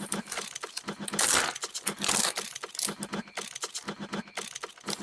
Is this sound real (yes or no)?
yes